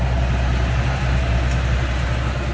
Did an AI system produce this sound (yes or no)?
no